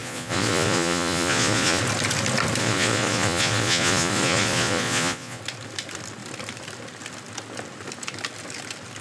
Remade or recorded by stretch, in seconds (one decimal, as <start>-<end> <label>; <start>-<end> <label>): 0.0-1.8 remade; 1.8-2.6 recorded; 2.6-5.4 remade; 5.4-9.0 recorded